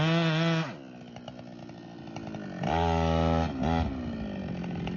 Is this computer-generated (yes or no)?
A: no